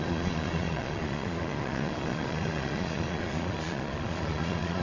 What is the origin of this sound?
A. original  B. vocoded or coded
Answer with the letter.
B